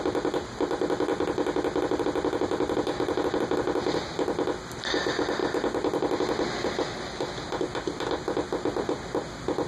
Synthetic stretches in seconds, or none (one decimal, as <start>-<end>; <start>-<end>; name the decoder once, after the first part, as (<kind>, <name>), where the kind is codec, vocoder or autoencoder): none